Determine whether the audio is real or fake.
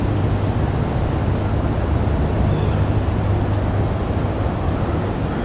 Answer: real